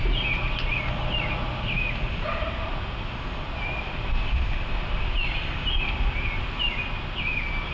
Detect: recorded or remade recorded